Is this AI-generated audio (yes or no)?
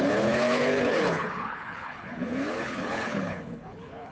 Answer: yes